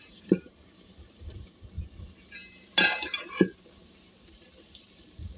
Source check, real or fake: fake